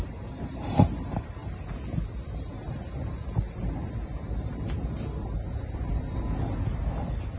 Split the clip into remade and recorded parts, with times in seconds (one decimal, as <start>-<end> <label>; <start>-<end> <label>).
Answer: 0.0-1.4 remade; 1.4-2.4 recorded; 2.4-2.8 remade; 2.8-7.4 recorded